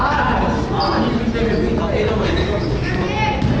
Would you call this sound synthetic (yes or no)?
no